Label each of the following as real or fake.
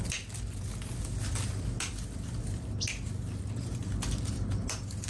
real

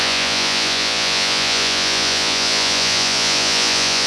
fake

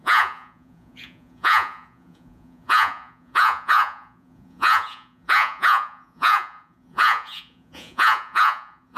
fake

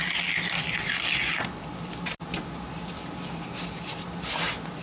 real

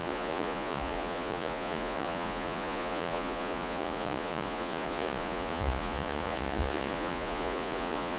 fake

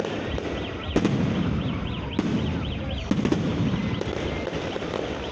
real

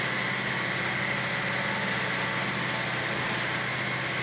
real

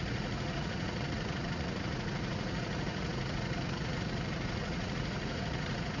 fake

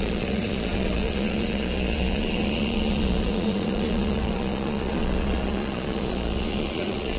fake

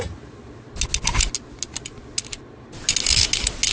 real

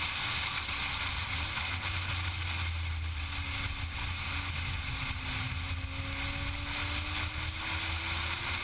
real